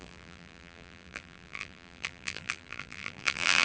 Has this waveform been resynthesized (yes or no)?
yes